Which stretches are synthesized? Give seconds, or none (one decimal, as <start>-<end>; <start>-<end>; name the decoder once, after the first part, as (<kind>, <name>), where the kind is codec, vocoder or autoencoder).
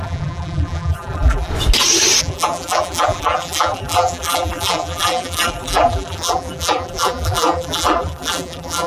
0.0-1.5 (vocoder, BigVGAN v2); 2.2-8.9